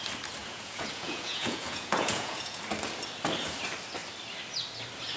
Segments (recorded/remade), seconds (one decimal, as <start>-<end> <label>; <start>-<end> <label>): 0.0-0.4 recorded; 0.4-2.6 remade; 2.6-5.2 recorded